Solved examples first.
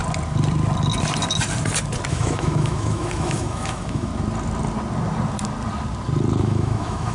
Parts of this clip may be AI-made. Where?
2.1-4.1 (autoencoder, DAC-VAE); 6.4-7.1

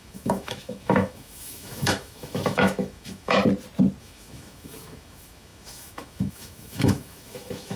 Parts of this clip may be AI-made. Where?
0.0-3.4 (autoencoder, DAC-VAE); 4.0-7.8

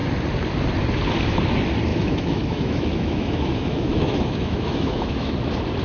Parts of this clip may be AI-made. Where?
1.9-5.3 (autoencoder, DAC-VAE)